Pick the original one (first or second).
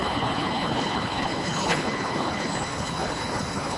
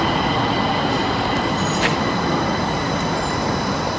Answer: second